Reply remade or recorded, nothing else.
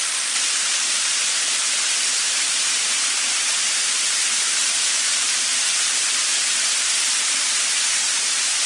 remade